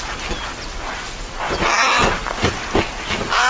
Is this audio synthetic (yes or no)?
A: no